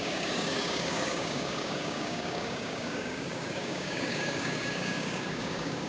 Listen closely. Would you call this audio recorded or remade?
remade